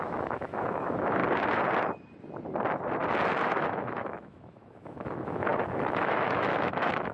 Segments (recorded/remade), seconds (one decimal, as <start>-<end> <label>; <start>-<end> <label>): 0.0-1.2 remade; 1.2-3.4 recorded; 3.4-7.1 remade